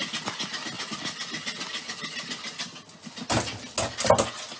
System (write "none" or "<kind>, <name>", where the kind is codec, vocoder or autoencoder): none